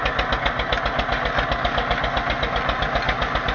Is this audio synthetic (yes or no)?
no